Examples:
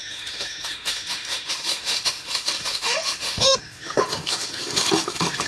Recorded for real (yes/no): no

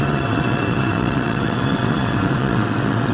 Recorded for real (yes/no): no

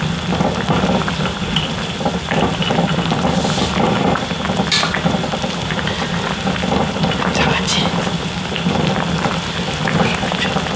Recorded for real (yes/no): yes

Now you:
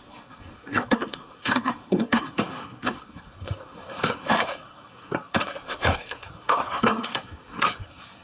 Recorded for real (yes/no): no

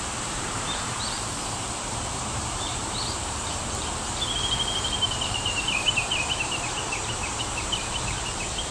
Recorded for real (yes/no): no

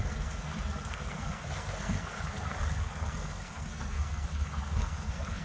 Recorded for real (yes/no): no